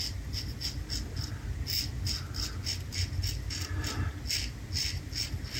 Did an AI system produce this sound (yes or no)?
no